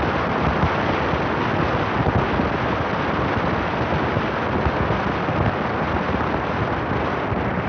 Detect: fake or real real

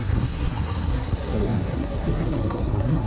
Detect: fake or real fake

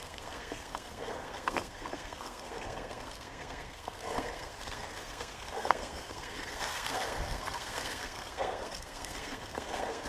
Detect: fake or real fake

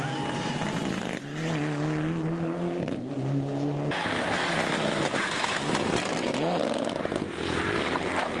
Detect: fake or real real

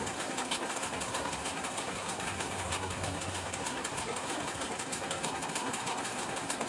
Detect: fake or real fake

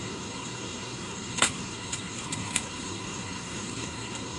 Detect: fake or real fake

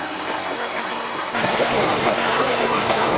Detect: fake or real fake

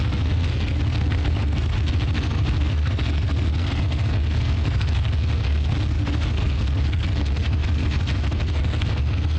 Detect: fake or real fake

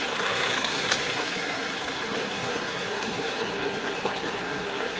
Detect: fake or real fake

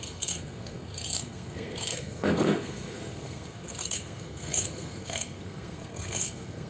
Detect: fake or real fake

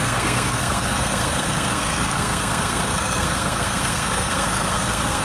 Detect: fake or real fake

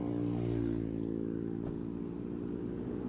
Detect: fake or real real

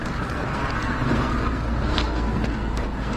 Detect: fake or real fake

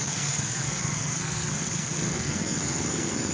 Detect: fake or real fake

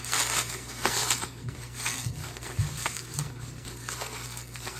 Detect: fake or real fake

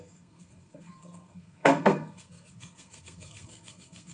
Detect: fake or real fake